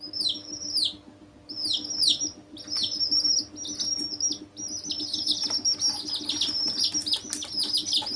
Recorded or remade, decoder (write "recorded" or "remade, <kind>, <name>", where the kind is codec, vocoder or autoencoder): recorded